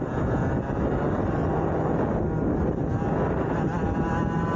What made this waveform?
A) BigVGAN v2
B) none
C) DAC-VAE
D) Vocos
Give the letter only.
B